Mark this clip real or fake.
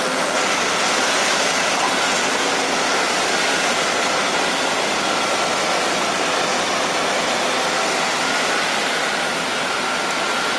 real